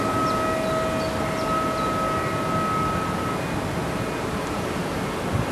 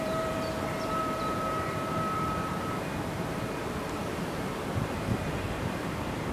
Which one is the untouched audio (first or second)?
first